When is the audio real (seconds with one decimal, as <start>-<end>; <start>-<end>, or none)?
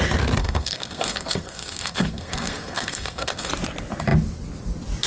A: 0.0-0.4; 3.5-5.1